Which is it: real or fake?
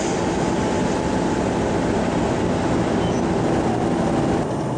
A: real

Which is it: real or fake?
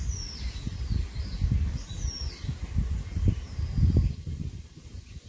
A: real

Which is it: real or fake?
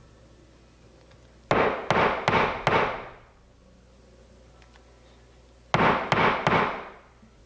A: real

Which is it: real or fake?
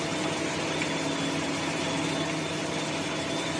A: real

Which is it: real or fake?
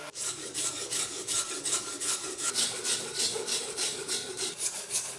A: fake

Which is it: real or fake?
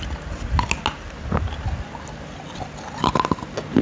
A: real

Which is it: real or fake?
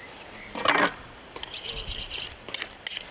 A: real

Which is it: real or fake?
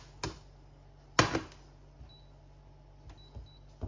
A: real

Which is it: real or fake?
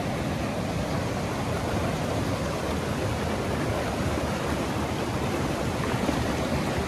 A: fake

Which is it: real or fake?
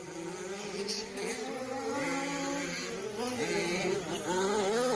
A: real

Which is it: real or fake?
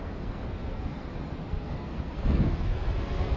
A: fake